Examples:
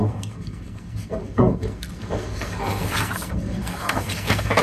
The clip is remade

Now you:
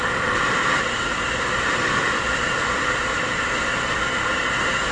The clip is recorded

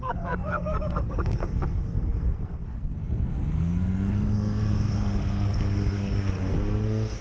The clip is remade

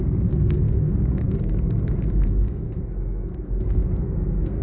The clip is remade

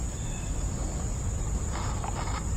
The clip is recorded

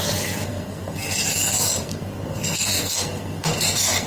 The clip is remade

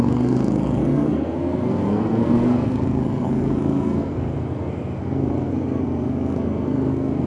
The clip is remade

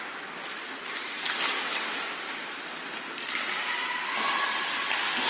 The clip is recorded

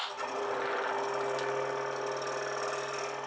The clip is recorded